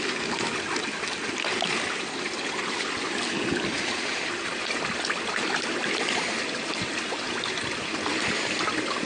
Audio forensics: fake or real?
real